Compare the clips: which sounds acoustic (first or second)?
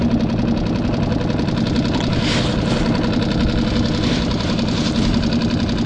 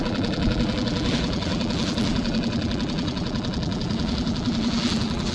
first